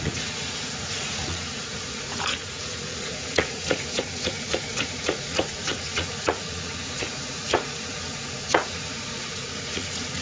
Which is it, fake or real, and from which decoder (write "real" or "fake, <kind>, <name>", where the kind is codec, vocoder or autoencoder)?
fake, vocoder, Vocos